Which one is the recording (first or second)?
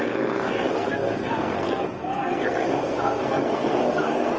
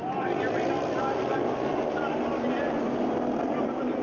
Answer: second